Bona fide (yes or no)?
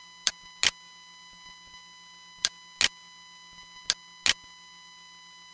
yes